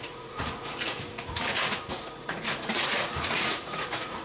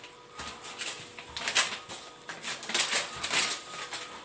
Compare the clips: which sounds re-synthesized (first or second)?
first